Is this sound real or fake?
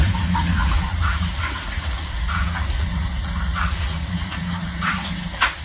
fake